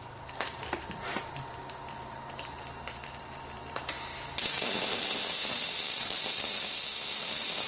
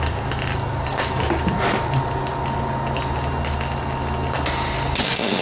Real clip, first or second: second